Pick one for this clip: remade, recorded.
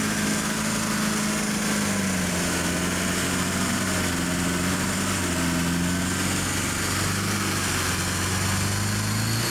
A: recorded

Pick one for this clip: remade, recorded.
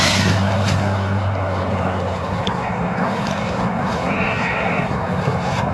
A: remade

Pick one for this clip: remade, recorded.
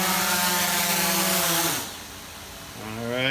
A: recorded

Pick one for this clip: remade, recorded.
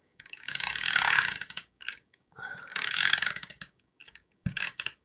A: remade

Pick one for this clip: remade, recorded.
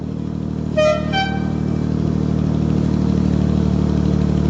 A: recorded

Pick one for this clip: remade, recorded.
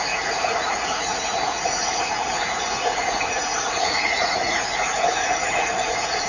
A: remade